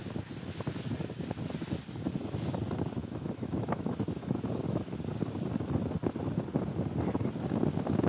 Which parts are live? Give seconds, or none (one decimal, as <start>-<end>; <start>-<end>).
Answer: 0.0-3.0; 5.0-8.1